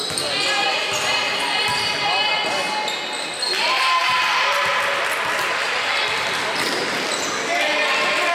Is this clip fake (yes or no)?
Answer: no